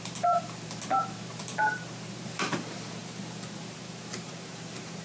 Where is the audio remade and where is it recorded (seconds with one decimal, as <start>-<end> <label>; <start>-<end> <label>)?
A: 0.0-3.0 remade; 3.0-3.6 recorded; 3.6-5.0 remade